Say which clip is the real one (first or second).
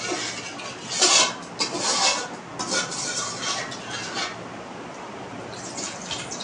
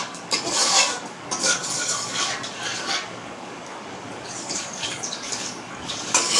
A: first